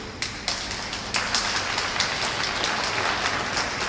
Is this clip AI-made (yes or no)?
no